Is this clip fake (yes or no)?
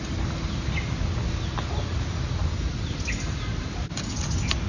no